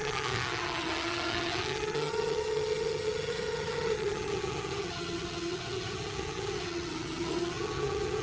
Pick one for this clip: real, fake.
fake